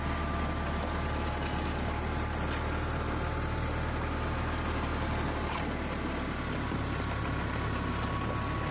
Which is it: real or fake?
real